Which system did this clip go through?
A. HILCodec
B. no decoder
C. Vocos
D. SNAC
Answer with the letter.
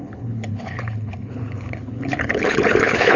A